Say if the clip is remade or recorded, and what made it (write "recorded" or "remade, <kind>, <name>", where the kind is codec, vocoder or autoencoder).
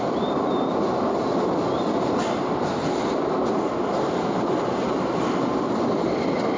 recorded